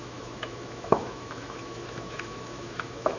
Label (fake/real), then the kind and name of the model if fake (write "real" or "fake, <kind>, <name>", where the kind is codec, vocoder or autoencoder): fake, autoencoder, DAC-VAE